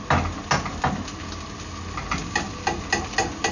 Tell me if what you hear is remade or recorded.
recorded